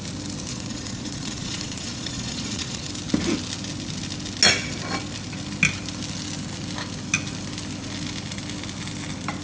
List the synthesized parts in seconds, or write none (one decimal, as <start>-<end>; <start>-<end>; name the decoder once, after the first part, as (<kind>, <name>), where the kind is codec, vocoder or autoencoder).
0.5-2.9 (vocoder, Vocos)